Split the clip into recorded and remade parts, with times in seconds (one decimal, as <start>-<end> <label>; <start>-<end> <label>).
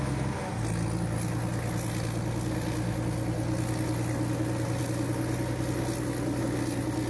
0.0-7.1 recorded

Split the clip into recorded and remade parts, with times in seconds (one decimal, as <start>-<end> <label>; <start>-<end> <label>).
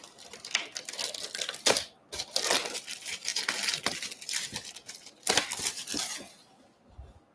0.0-7.3 recorded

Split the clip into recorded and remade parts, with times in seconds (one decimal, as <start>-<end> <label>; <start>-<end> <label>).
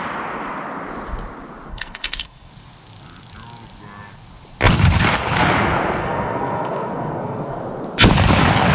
0.0-1.7 recorded; 1.7-2.5 remade; 2.5-6.0 recorded; 6.0-7.6 remade; 7.6-8.7 recorded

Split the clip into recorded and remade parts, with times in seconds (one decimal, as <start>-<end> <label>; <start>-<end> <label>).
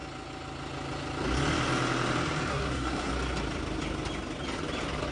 0.0-2.5 recorded; 2.5-3.1 remade; 3.1-5.1 recorded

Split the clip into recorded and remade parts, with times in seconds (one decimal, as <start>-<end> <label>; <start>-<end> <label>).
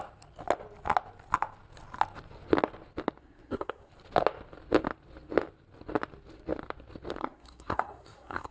0.0-3.2 recorded; 3.2-3.9 remade; 3.9-7.2 recorded; 7.2-8.5 remade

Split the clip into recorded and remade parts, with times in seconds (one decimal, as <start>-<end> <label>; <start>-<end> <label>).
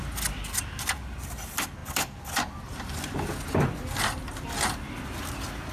0.0-5.7 recorded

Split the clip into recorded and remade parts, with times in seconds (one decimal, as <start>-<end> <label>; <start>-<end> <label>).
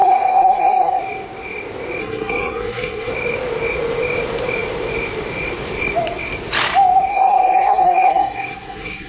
0.0-1.0 remade; 1.0-2.0 recorded; 2.0-3.1 remade; 3.1-7.1 recorded; 7.1-9.1 remade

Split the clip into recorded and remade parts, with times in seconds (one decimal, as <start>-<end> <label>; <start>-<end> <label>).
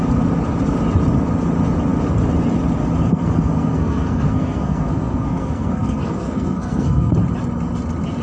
0.0-3.1 recorded; 3.1-7.1 remade; 7.1-8.2 recorded